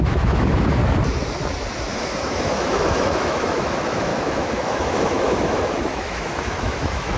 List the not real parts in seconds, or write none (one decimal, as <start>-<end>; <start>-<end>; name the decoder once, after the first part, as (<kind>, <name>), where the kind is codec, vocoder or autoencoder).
0.0-0.8 (autoencoder, DAC-VAE); 2.0-7.2